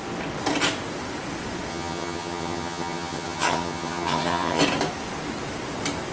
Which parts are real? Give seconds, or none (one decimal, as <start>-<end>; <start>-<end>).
0.0-1.7; 4.6-6.1